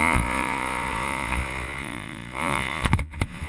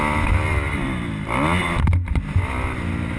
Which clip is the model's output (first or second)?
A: first